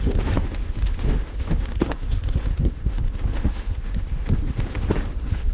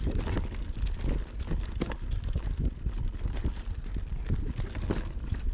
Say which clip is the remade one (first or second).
first